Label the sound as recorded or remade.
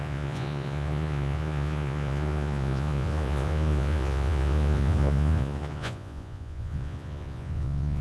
remade